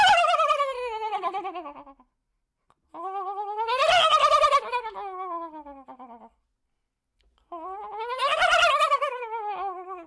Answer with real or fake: real